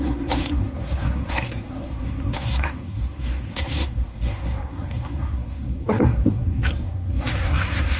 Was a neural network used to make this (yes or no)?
yes